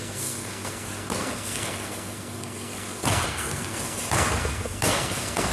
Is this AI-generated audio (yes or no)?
yes